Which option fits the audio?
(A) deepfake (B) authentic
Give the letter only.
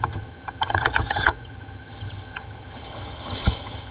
A